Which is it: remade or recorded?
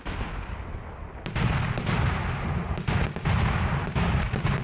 recorded